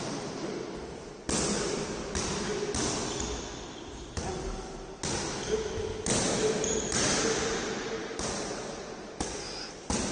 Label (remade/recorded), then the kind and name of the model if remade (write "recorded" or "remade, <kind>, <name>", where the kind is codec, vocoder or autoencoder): recorded